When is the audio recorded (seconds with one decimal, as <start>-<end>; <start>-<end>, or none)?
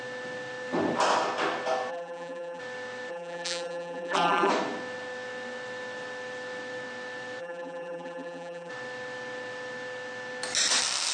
0.0-1.9; 2.6-3.1; 4.5-7.4; 8.7-11.1